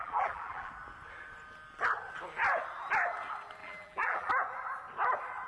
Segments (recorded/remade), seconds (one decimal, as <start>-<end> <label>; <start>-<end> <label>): 0.0-0.7 remade; 0.7-3.6 recorded; 3.6-4.3 remade; 4.3-5.5 recorded